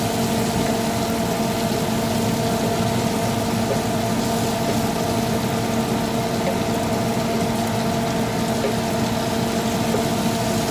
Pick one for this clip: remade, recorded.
recorded